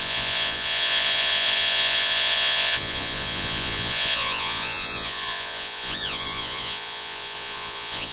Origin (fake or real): fake